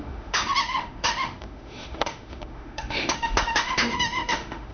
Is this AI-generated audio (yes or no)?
yes